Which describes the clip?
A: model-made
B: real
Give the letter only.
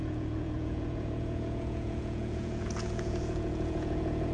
A